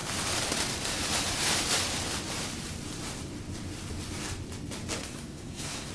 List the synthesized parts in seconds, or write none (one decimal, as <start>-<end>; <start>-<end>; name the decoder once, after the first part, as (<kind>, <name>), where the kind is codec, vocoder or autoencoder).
5.0-5.9 (codec, SNAC)